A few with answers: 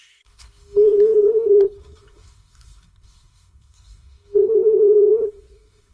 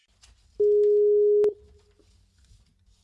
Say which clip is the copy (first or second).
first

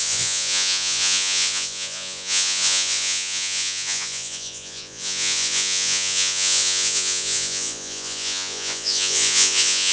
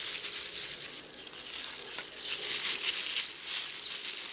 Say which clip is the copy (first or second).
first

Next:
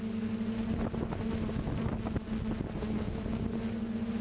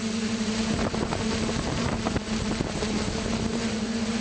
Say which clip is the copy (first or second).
second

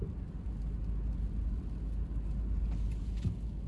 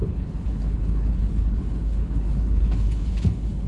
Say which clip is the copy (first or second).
second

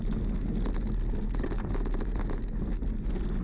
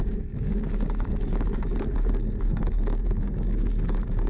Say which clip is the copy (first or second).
second